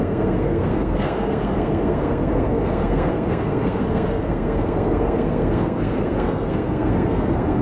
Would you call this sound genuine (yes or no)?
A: no